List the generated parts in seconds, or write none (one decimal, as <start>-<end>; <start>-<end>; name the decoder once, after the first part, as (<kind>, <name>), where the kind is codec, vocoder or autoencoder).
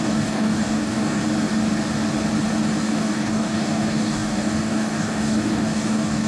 0.0-1.2 (codec, DAC); 2.8-6.3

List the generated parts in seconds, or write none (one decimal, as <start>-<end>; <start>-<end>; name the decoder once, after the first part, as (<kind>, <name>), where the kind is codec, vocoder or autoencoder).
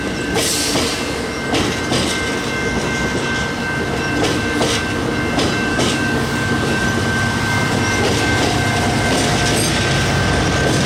5.7-6.8 (codec, DAC)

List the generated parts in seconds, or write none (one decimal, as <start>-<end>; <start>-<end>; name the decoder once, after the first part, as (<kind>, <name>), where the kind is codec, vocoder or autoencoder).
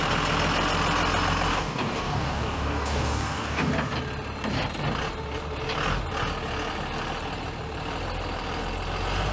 1.5-3.7 (codec, DAC)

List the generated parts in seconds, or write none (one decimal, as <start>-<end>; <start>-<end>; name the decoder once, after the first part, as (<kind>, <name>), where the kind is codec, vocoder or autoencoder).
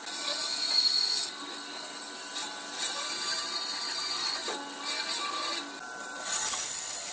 none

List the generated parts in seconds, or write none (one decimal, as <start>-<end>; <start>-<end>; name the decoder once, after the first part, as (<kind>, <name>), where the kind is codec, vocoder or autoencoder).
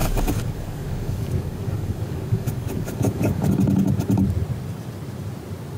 0.0-3.5 (codec, DAC)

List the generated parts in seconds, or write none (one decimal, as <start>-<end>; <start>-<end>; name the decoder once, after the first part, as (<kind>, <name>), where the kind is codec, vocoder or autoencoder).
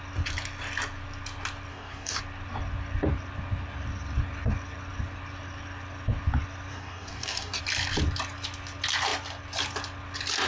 1.7-2.2 (codec, DAC); 6.7-7.6